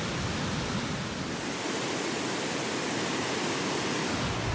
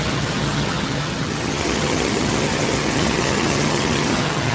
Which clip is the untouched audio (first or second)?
first